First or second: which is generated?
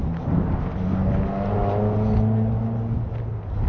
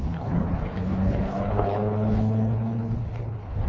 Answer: second